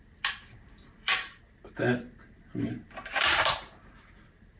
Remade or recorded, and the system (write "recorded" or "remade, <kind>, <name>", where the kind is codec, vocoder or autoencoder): remade, vocoder, BigVGAN v2